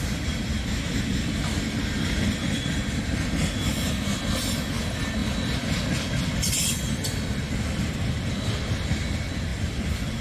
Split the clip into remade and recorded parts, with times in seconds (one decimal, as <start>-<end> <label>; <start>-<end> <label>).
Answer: 0.0-1.1 recorded; 1.1-3.2 remade; 3.2-5.2 recorded; 5.2-8.9 remade; 8.9-9.5 recorded; 9.5-10.2 remade